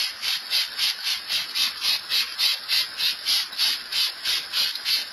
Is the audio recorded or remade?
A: recorded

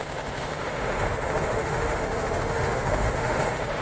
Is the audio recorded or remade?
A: remade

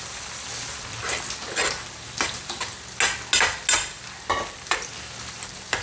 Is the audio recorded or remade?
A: recorded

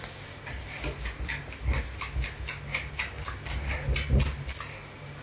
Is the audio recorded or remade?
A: recorded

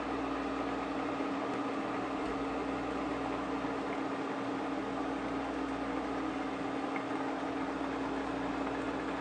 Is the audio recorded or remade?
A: recorded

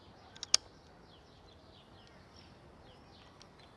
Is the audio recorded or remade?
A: recorded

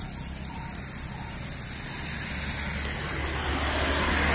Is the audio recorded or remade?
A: recorded